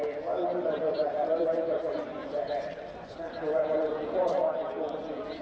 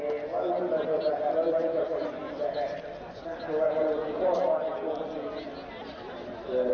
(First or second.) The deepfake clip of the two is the first